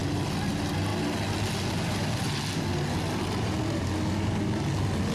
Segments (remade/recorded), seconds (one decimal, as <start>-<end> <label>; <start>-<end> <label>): 0.0-5.1 recorded